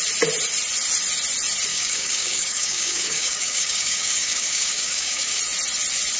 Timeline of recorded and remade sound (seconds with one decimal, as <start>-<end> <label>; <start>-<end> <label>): 0.0-1.7 recorded; 1.7-5.4 remade; 5.4-6.2 recorded